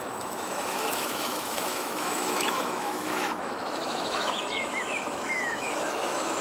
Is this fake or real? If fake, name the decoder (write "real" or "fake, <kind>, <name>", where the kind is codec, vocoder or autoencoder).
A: fake, autoencoder, DAC-VAE